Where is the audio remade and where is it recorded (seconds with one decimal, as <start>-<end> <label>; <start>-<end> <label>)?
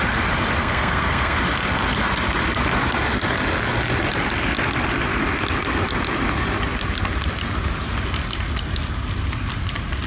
0.0-0.6 recorded; 0.6-1.4 remade; 1.4-10.1 recorded